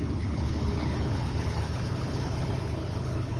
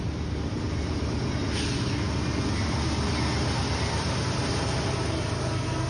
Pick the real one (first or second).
second